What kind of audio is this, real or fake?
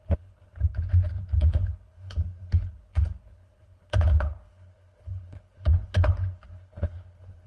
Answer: fake